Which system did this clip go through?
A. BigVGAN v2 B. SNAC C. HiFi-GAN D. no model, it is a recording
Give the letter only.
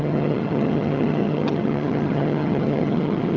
C